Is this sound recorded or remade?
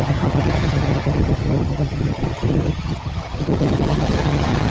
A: remade